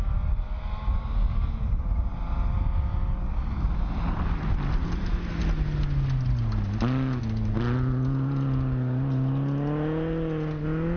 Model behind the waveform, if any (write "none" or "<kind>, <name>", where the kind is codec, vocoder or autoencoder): none